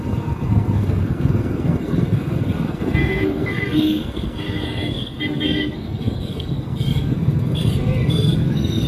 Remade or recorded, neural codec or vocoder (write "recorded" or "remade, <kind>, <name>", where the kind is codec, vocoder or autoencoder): remade, codec, SNAC